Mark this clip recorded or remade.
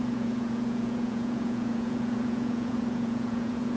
remade